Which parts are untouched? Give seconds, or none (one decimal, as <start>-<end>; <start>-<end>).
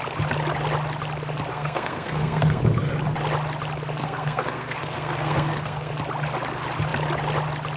0.0-1.5; 2.6-4.0; 5.9-7.8